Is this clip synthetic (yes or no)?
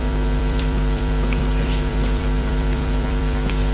yes